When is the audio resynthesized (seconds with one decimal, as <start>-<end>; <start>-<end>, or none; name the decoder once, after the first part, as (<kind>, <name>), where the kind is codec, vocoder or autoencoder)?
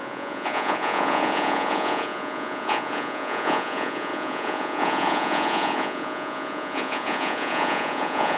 0.0-8.4 (vocoder, Vocos)